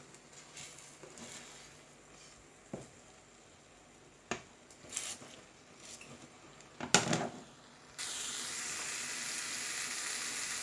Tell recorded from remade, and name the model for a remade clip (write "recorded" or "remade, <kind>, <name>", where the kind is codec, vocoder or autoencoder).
recorded